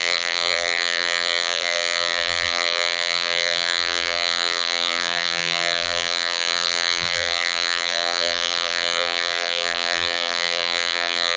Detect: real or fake fake